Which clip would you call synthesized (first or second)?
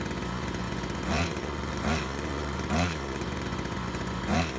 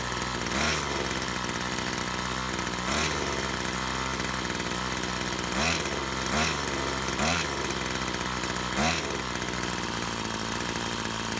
first